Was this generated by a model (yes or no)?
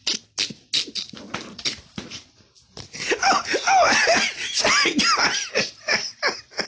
no